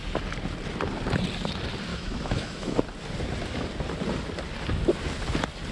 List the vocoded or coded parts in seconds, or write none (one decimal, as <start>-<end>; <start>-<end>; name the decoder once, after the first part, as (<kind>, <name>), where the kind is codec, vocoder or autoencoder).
1.9-2.8 (autoencoder, DAC-VAE)